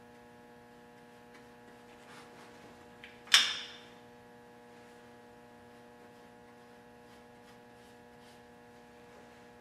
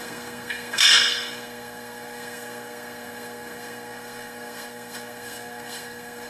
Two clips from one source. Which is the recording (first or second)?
first